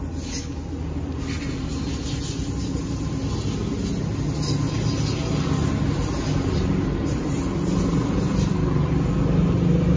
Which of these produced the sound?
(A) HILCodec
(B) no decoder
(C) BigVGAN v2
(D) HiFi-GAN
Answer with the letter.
B